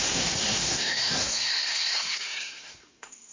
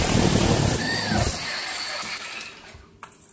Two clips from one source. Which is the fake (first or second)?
first